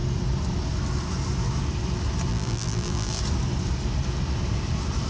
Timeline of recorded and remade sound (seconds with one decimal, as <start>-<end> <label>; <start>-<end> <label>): 0.0-2.3 recorded; 2.3-3.2 remade; 3.2-5.1 recorded